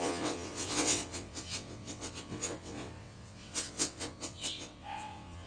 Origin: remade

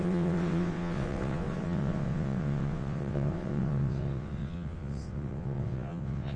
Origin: remade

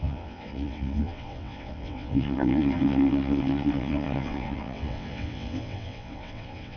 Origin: remade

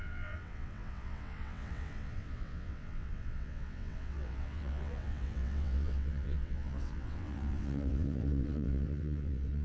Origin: remade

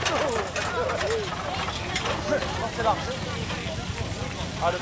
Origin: recorded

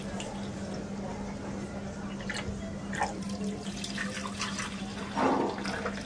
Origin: recorded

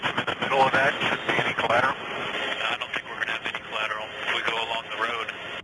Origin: recorded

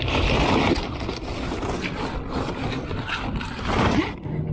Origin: recorded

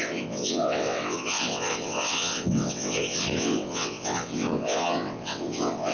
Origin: remade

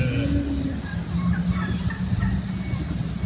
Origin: recorded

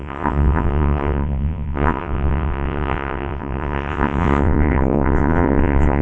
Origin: remade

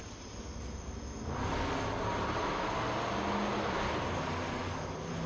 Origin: recorded